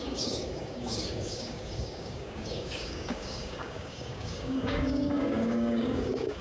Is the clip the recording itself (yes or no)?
no